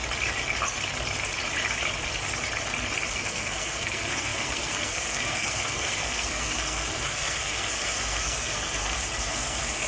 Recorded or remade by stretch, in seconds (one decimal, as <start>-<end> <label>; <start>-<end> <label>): 0.0-3.1 recorded; 3.1-9.9 remade